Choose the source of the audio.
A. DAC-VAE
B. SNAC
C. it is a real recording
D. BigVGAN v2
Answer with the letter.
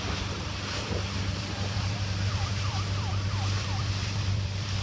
D